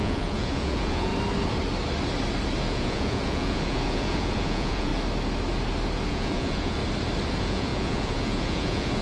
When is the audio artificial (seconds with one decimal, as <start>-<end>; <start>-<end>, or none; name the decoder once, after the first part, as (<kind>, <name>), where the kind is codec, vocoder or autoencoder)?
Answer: 0.0-1.1 (vocoder, Vocos); 2.6-4.9; 6.1-6.8; 7.3-9.0